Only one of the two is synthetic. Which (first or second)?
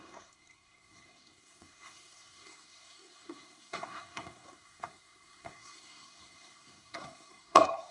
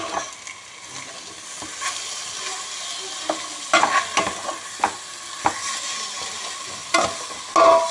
first